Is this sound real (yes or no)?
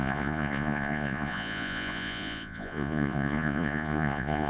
no